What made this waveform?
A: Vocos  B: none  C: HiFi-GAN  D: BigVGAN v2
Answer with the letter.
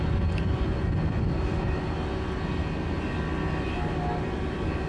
B